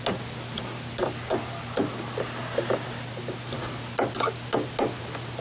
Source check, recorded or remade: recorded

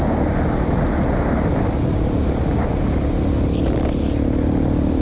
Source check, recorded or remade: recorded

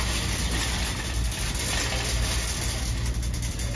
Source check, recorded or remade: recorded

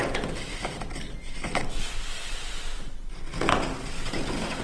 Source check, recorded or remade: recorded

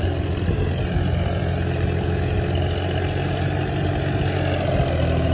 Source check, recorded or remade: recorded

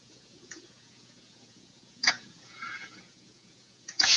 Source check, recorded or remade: remade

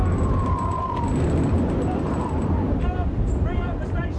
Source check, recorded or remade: recorded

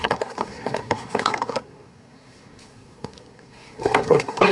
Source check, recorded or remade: remade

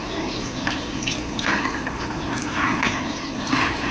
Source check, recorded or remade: remade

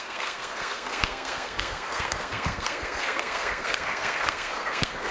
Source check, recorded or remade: remade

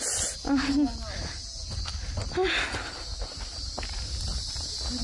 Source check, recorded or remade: recorded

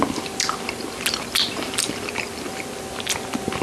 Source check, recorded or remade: recorded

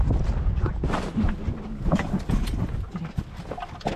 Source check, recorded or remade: recorded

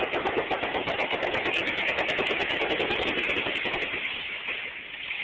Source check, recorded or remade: recorded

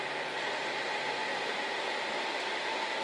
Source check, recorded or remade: recorded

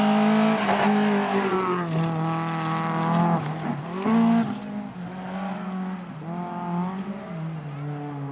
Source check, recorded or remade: recorded